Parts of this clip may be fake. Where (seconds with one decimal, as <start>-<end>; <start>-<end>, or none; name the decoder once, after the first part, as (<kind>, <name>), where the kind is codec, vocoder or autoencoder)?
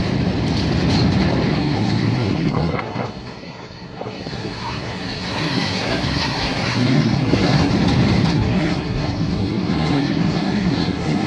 1.5-7.7 (codec, SNAC); 8.3-11.3